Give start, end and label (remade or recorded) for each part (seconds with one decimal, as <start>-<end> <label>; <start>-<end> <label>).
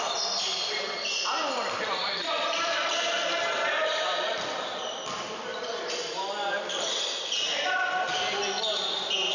0.0-2.0 recorded; 2.0-3.3 remade; 3.3-3.8 recorded; 3.8-4.8 remade; 4.8-5.5 recorded; 5.5-8.4 remade; 8.4-9.3 recorded